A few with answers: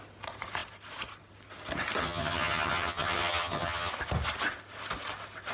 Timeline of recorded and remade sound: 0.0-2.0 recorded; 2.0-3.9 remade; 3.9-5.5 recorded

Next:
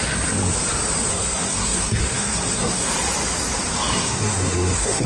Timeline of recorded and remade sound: 0.0-1.1 recorded; 1.1-2.9 remade; 2.9-3.9 recorded; 3.9-5.1 remade